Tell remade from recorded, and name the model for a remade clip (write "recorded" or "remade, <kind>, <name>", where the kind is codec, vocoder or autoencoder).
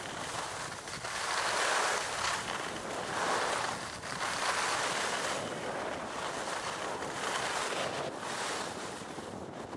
recorded